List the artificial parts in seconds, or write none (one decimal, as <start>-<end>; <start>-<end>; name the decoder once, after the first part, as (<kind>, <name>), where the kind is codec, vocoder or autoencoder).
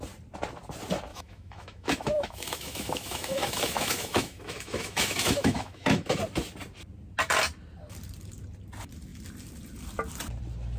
1.1-6.2 (autoencoder, DAC-VAE)